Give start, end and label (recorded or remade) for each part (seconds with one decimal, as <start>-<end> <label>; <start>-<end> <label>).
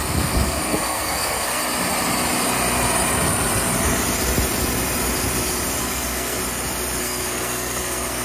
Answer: 0.0-1.6 remade; 1.6-5.8 recorded; 5.8-6.4 remade; 6.4-7.0 recorded; 7.0-8.2 remade